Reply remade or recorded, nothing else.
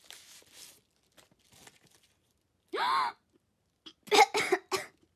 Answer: recorded